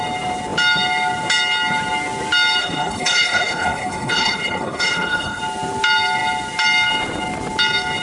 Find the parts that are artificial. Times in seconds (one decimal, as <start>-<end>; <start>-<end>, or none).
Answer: 2.6-5.4